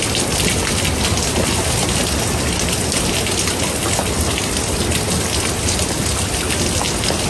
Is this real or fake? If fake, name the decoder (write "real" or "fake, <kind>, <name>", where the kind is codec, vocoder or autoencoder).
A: real